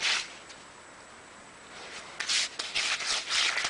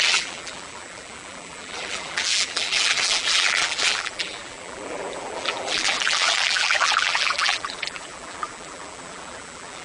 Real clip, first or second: first